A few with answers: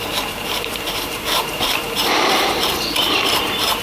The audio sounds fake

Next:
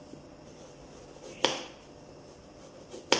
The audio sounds real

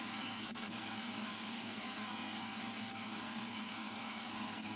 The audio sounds fake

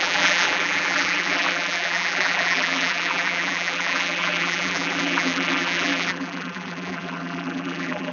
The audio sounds fake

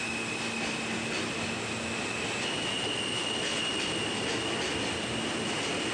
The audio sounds real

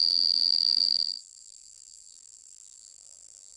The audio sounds fake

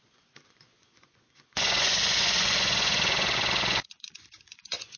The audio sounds fake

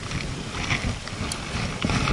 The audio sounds real